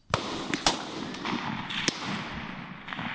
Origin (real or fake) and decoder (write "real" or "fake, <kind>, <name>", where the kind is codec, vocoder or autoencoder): real